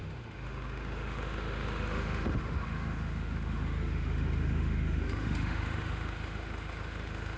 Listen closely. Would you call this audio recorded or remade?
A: remade